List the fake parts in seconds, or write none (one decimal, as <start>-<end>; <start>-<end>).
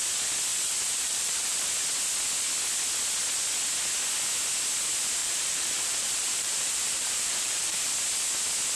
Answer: 0.5-1.7; 5.2-7.9